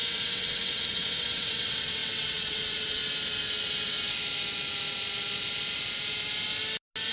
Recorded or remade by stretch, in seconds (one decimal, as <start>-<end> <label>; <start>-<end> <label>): 0.0-3.0 remade; 3.0-7.1 recorded